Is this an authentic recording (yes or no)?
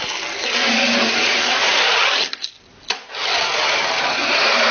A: yes